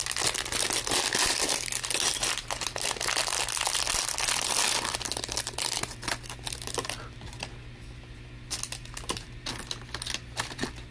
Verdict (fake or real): real